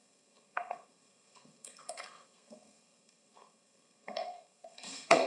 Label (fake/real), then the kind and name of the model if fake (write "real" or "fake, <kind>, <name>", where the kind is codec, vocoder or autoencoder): fake, codec, SNAC